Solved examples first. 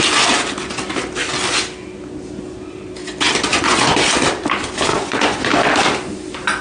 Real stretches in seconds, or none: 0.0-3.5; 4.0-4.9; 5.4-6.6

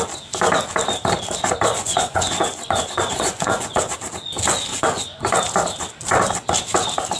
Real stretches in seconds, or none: 0.0-1.7; 3.8-4.7; 5.3-7.2

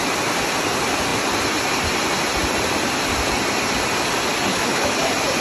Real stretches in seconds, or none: 0.0-4.5; 5.0-5.4